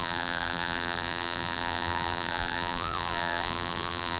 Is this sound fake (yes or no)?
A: yes